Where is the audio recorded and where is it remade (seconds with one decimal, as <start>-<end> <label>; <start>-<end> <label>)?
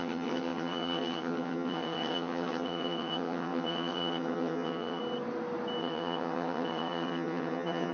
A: 0.0-5.0 remade; 5.0-5.8 recorded; 5.8-7.9 remade